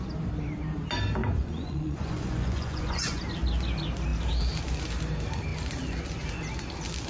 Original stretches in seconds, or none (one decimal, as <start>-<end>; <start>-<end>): 0.0-1.2; 3.2-7.1